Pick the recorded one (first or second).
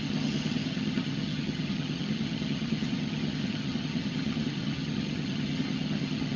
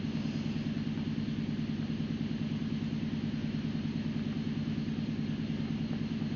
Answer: second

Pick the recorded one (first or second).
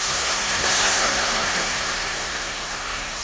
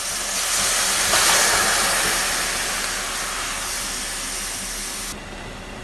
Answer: second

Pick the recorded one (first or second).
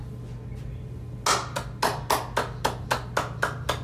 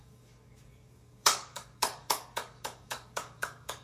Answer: first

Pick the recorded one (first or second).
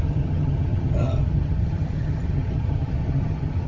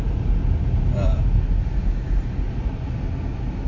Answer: second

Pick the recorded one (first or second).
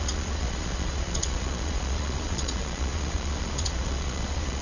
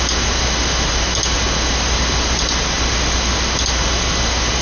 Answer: second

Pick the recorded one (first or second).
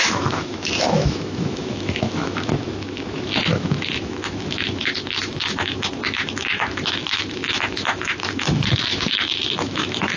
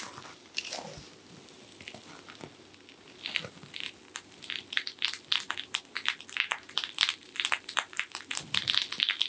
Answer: second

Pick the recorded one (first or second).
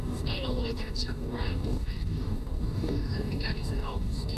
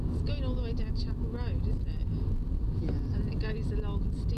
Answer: second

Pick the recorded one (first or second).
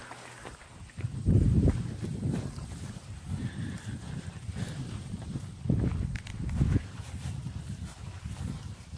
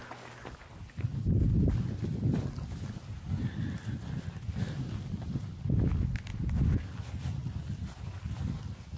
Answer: second